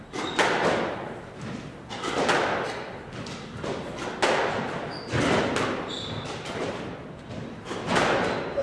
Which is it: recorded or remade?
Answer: recorded